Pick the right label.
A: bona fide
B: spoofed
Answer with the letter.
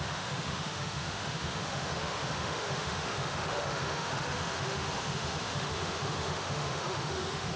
B